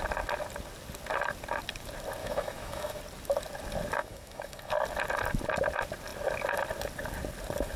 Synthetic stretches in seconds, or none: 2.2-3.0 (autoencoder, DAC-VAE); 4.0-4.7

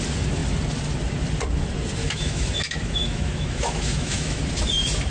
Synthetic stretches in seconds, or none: 2.0-4.4 (autoencoder, DAC-VAE)

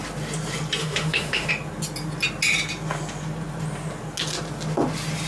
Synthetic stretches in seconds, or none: 0.8-1.5 (autoencoder, DAC-VAE)

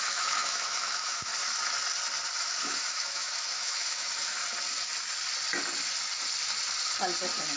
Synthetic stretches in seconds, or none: 0.0-1.3 (autoencoder, DAC-VAE); 2.4-4.4

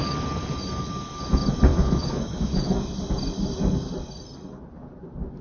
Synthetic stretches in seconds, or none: 1.7-2.7 (autoencoder, DAC-VAE)

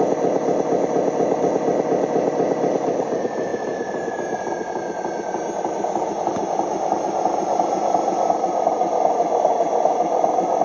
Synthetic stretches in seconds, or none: none